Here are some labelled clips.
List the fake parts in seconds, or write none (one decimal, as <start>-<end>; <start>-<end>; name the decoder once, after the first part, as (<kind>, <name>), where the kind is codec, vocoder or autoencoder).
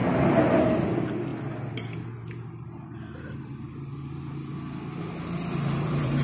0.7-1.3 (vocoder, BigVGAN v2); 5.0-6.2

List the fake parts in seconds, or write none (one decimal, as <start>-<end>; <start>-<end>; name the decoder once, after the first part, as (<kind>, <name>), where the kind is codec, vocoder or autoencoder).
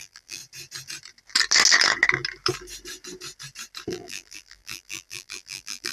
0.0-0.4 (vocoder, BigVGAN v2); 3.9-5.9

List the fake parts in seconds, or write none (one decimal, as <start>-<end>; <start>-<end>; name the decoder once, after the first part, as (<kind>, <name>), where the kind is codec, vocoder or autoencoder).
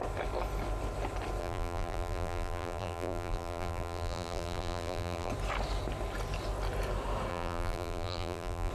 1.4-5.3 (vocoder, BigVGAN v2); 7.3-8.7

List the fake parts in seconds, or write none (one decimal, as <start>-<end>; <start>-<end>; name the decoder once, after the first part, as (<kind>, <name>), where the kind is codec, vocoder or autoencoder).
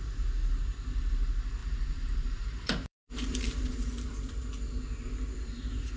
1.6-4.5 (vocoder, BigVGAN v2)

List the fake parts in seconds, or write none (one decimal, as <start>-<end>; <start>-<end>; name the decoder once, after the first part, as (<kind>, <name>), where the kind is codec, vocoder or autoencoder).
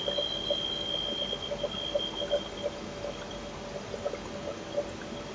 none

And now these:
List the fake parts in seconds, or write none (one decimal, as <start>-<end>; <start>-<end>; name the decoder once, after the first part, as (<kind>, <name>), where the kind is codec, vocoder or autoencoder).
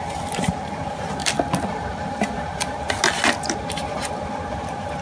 0.0-1.2 (vocoder, BigVGAN v2); 1.7-3.0; 3.6-5.0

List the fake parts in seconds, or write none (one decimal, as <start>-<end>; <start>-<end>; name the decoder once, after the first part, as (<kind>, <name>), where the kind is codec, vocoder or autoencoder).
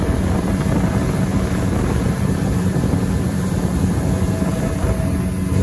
1.3-2.9 (vocoder, BigVGAN v2)